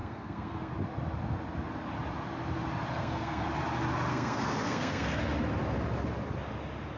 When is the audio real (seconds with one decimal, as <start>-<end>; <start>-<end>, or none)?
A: 0.7-3.0; 3.5-4.1; 5.2-7.0